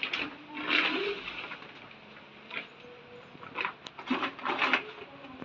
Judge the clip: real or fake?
real